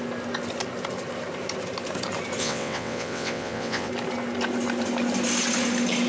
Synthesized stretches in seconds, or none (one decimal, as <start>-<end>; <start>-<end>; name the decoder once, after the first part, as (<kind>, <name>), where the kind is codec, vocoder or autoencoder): 2.4-3.9 (vocoder, WaveNeXt)